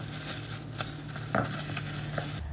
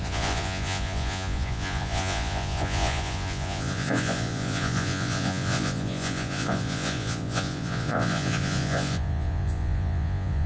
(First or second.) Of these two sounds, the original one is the first